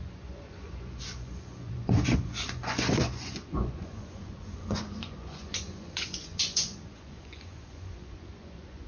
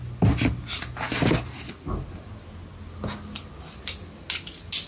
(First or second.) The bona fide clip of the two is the second